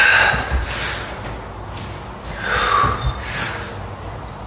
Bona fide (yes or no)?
yes